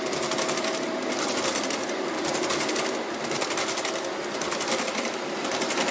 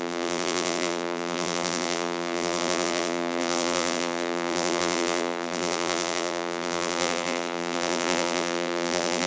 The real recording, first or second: first